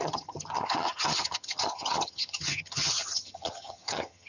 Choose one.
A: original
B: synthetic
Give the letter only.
B